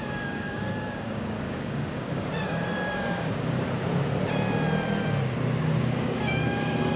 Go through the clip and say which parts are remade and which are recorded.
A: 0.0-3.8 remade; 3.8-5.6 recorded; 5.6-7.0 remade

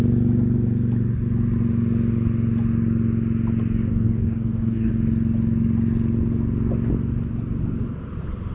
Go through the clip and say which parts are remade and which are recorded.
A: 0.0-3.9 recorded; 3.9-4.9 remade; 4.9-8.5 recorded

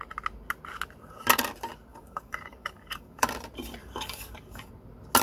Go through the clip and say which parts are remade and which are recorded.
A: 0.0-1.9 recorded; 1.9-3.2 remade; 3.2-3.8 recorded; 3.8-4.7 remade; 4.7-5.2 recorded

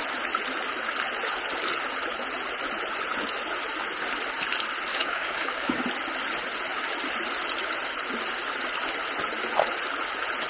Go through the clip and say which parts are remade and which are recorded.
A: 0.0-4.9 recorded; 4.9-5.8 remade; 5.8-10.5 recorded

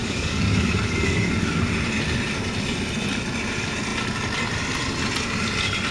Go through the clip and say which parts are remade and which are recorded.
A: 0.0-1.6 remade; 1.6-5.9 recorded